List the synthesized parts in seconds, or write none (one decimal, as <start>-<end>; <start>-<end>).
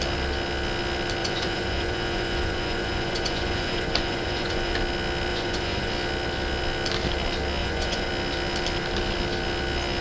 1.2-4.7; 5.3-5.9; 7.6-8.1